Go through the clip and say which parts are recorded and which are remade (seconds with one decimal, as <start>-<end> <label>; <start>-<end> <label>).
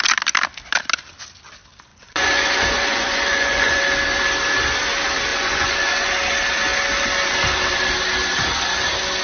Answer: 0.0-1.9 recorded; 1.9-3.8 remade; 3.8-5.3 recorded; 5.3-6.1 remade; 6.1-9.2 recorded